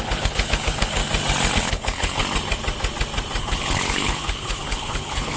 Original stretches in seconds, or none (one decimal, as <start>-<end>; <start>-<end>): 1.0-1.5; 2.2-3.4